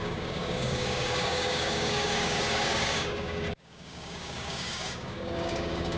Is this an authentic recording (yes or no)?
no